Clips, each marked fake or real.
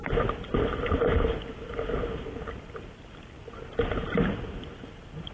real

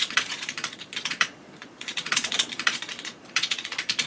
fake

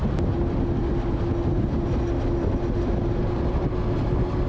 real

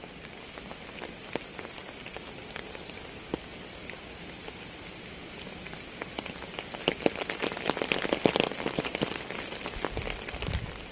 fake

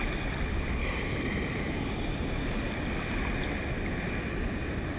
real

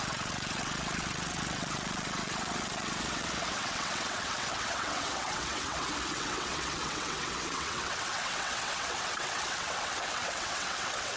fake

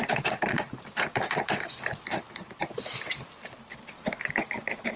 real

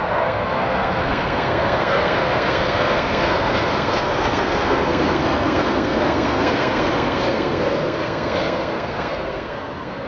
fake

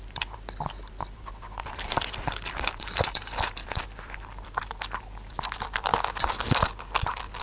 fake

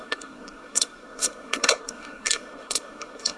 fake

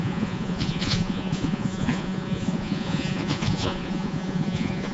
fake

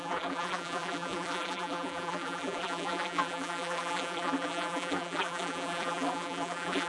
fake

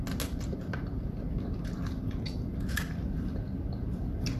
real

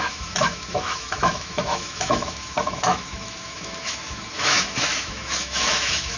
fake